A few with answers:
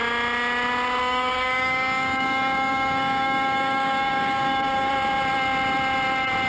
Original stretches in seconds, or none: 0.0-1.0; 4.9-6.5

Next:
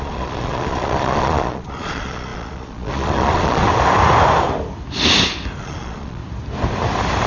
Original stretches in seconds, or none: 3.6-5.6; 6.2-7.3

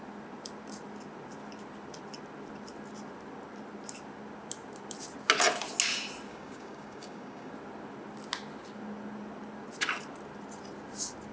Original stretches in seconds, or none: 0.0-6.3; 7.5-11.3

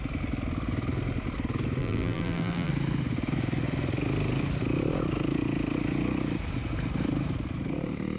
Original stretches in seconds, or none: 0.0-1.8; 2.7-8.2

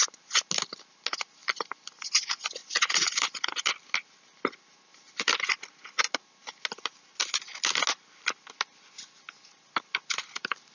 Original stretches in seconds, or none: 0.0-10.7